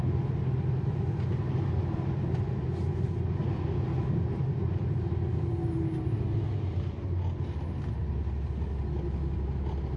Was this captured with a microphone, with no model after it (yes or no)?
yes